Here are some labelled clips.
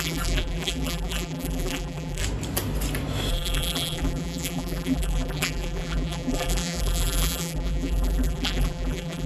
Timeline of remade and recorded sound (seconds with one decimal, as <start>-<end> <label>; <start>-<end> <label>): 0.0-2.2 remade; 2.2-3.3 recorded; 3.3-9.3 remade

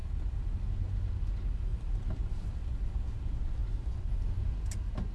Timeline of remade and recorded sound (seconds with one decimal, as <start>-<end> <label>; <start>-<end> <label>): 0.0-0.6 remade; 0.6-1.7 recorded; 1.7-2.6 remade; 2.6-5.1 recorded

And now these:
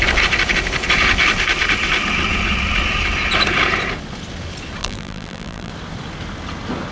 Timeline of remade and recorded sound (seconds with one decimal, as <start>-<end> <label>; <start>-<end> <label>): 0.0-4.8 recorded; 4.8-5.7 remade; 5.7-6.9 recorded

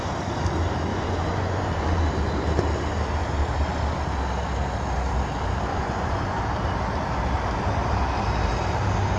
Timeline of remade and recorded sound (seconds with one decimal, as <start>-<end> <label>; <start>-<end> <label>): 0.0-0.9 recorded; 0.9-2.0 remade; 2.0-5.7 recorded; 5.7-6.4 remade; 6.4-9.2 recorded